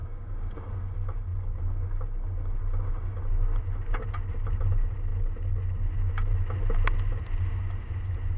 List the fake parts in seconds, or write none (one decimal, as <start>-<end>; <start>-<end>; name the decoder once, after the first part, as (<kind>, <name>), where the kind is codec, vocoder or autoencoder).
none